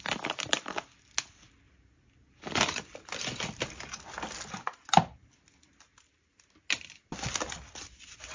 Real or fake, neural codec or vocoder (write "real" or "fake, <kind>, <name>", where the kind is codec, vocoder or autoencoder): real